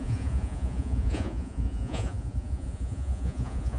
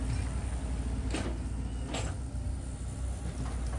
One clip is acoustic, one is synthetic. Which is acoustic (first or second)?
second